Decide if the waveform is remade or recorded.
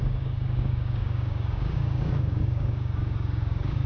remade